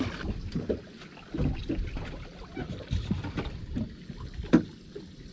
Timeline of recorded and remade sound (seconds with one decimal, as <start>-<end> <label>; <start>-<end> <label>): 0.0-5.3 recorded